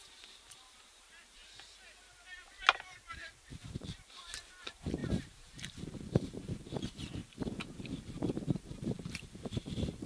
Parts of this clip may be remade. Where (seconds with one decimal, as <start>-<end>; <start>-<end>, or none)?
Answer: 0.0-1.4; 3.8-10.1

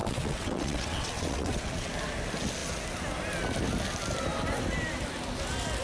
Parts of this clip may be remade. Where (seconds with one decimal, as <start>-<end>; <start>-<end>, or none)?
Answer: 0.0-1.9

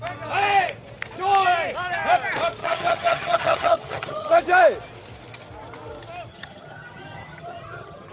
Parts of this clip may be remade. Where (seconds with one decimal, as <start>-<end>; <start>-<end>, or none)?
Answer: 2.6-4.4; 6.3-8.1

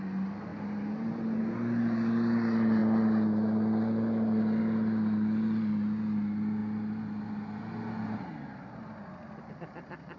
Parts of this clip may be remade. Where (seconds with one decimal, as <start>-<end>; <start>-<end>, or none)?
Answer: none

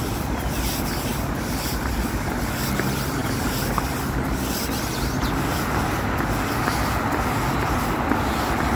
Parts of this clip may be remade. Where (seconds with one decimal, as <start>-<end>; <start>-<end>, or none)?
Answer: 1.1-1.8

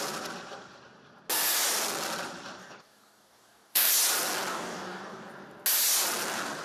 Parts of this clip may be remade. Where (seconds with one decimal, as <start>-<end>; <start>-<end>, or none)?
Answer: 2.6-3.9; 4.5-5.3

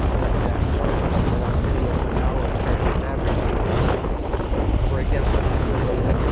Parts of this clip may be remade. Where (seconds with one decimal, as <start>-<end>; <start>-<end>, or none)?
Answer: 0.5-1.0; 3.7-4.3; 5.3-6.3

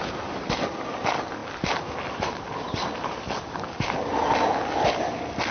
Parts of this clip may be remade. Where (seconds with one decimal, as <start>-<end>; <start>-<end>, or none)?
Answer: none